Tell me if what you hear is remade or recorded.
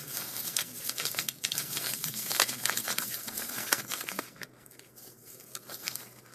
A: remade